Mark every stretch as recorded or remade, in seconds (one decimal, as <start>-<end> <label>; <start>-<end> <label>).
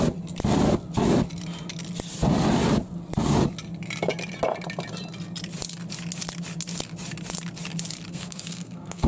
0.0-8.1 recorded; 8.1-9.1 remade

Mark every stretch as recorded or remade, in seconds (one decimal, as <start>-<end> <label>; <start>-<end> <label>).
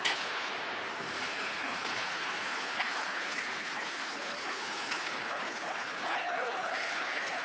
0.0-0.5 remade; 0.5-1.3 recorded; 1.3-7.4 remade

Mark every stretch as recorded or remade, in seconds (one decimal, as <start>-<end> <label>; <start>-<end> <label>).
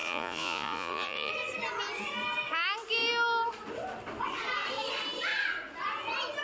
0.0-1.3 remade; 1.3-6.4 recorded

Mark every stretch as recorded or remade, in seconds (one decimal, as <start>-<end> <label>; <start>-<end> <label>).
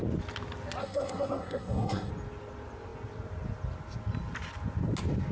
0.0-0.8 recorded; 0.8-2.1 remade; 2.1-5.3 recorded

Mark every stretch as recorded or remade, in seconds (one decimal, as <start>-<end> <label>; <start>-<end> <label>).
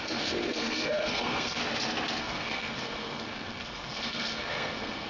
0.0-1.6 remade; 1.6-2.2 recorded; 2.2-5.1 remade